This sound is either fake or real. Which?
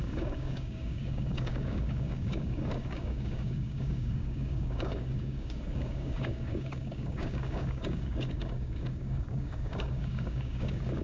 fake